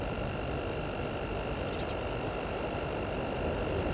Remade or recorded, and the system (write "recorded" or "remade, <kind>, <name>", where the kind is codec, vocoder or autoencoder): recorded